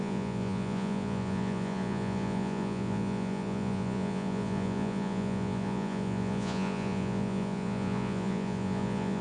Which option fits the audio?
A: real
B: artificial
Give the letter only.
B